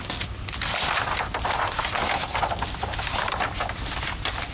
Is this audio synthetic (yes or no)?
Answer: no